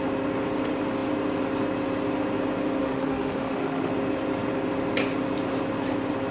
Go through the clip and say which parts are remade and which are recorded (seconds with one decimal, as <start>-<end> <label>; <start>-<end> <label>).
0.0-2.8 recorded; 2.8-3.9 remade; 3.9-6.3 recorded